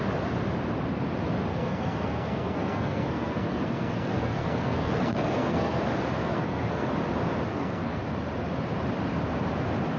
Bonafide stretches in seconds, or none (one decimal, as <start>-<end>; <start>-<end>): 0.0-1.5; 5.8-6.2; 6.9-7.5; 8.0-10.0